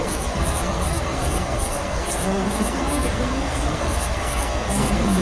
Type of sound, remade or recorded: remade